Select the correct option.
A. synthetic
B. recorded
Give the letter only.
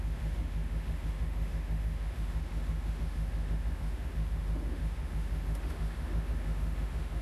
A